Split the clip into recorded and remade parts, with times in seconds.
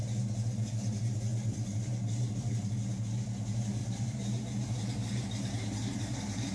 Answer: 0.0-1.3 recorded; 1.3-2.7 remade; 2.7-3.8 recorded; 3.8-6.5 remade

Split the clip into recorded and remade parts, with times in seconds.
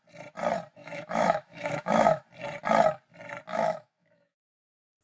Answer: 0.0-0.8 recorded; 0.8-2.2 remade; 2.2-3.5 recorded; 3.5-5.0 remade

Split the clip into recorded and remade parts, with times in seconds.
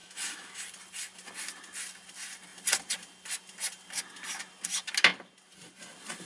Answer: 0.0-0.6 remade; 0.6-6.3 recorded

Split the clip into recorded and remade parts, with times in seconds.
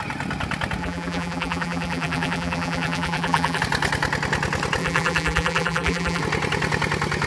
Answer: 0.0-0.8 recorded; 0.8-3.6 remade; 3.6-4.8 recorded; 4.8-6.2 remade; 6.2-7.3 recorded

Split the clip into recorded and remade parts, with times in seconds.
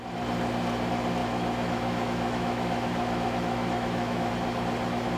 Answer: 0.0-1.2 recorded; 1.2-4.3 remade; 4.3-5.2 recorded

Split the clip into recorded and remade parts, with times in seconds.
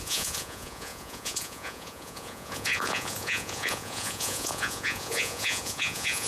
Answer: 0.0-6.3 remade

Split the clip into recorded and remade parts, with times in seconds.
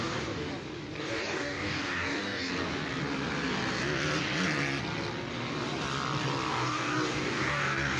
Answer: 0.0-0.5 remade; 0.5-1.0 recorded; 1.0-2.5 remade; 2.5-6.5 recorded; 6.5-8.0 remade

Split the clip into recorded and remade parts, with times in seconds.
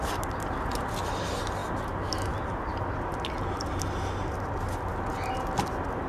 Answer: 0.0-6.1 recorded